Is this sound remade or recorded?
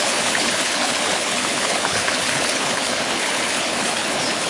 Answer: remade